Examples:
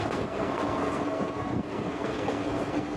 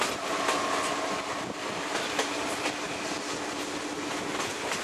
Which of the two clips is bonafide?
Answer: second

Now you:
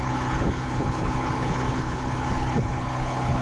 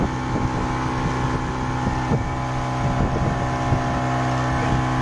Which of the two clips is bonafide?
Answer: second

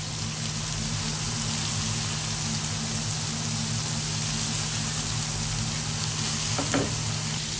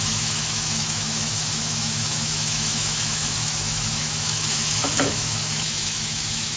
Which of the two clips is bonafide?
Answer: first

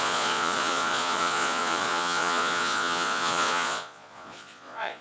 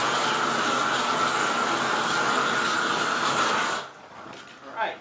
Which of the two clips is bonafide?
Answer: second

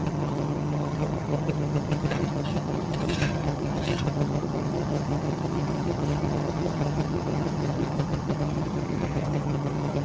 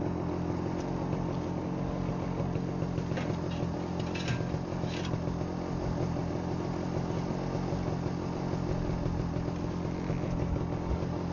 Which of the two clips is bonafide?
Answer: second